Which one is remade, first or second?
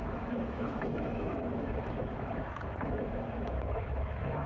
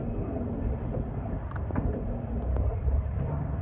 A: first